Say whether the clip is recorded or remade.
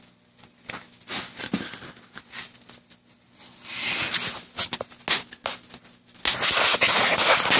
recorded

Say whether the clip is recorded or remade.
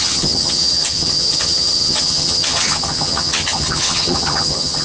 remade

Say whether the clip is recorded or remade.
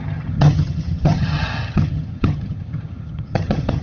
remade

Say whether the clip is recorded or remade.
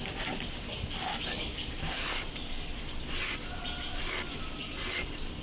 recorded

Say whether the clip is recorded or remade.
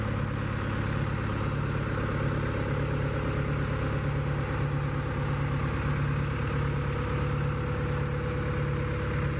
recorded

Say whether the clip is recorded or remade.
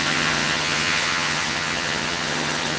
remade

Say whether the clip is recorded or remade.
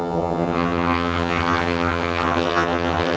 remade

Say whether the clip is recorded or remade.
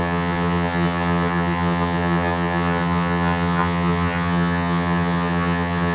remade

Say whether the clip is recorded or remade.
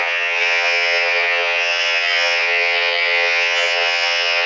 remade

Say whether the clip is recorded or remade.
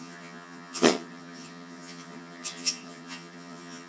remade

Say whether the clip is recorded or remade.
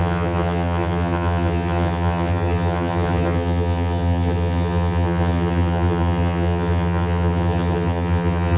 remade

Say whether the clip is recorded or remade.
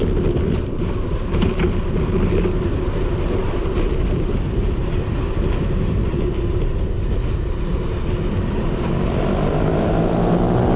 recorded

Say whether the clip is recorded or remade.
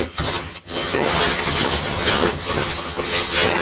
remade